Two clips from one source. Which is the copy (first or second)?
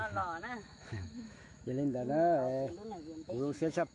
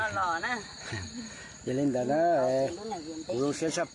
first